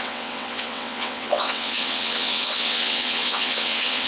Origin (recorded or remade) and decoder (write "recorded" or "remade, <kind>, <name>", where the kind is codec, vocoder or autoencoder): remade, vocoder, WaveNeXt